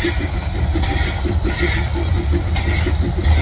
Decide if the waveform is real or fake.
real